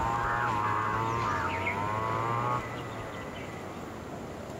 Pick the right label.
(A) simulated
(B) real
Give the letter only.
B